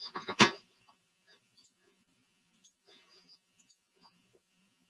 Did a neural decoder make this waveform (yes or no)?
yes